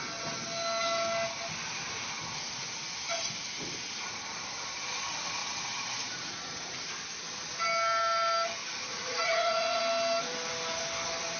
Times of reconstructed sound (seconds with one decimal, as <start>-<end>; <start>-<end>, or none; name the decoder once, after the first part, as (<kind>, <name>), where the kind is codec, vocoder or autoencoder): 5.4-6.6 (vocoder, Vocos); 8.9-9.8